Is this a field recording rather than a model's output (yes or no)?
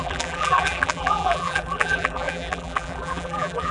no